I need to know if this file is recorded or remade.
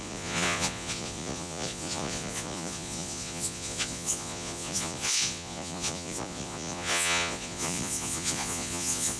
remade